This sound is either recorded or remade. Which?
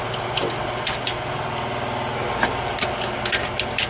recorded